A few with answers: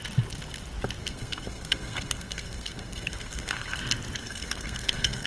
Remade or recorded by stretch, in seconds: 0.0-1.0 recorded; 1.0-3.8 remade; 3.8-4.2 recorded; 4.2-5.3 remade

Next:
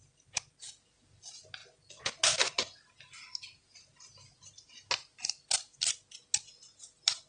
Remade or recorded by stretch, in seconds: 0.0-7.3 recorded

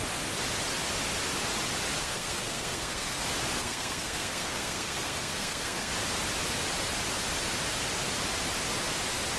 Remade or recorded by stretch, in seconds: 0.0-2.0 recorded; 2.0-3.2 remade; 3.2-3.6 recorded; 3.6-5.9 remade; 5.9-9.4 recorded

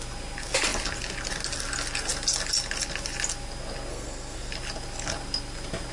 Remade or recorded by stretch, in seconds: 0.0-3.9 recorded; 3.9-4.5 remade; 4.5-5.9 recorded